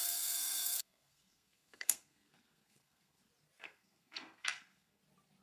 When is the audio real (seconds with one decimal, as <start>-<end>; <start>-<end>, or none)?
3.2-3.6; 5.0-5.4